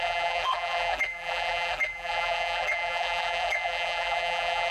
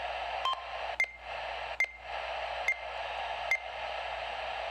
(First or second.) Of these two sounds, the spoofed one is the first